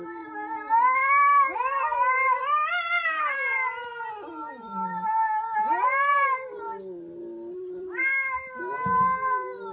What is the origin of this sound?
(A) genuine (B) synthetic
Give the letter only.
A